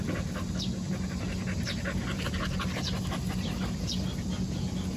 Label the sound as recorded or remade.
recorded